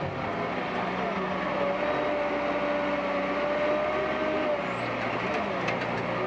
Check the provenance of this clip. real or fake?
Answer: real